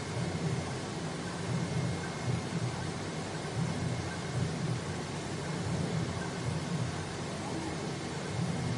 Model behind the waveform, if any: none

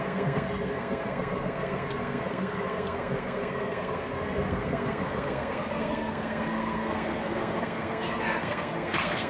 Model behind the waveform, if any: codec, SNAC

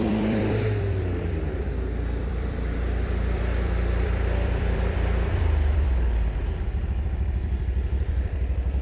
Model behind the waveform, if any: vocoder, BigVGAN v2